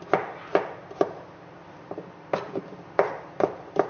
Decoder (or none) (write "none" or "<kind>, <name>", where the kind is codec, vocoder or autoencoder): none